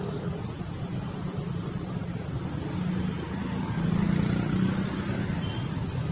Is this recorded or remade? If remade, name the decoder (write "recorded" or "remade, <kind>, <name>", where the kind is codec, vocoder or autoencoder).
recorded